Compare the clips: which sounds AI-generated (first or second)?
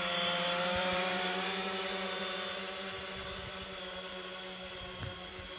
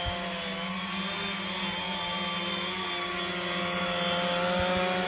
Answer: first